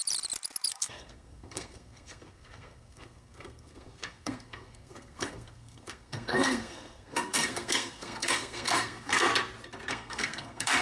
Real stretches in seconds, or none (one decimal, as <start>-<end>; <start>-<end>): 0.0-0.7; 9.3-9.9